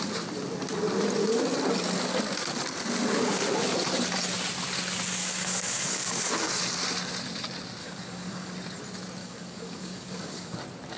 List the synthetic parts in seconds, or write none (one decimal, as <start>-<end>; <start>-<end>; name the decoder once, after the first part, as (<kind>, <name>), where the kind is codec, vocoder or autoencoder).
5.2-6.6 (codec, DAC); 7.8-8.5; 9.2-10.6

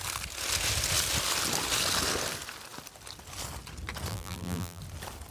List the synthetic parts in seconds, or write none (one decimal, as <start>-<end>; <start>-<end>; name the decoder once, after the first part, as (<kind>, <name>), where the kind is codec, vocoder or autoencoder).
4.1-4.8 (vocoder, BigVGAN v2)